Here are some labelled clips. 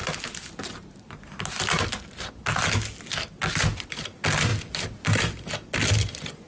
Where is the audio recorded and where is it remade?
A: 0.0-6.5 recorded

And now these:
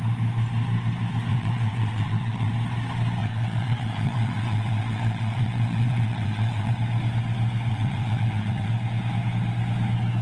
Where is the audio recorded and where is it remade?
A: 0.0-1.3 recorded; 1.3-2.5 remade; 2.5-3.2 recorded; 3.2-6.7 remade; 6.7-7.7 recorded; 7.7-8.7 remade; 8.7-10.2 recorded